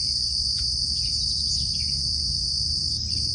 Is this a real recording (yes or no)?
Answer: yes